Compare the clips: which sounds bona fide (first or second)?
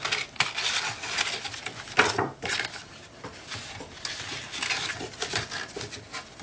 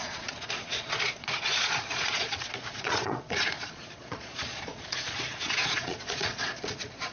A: first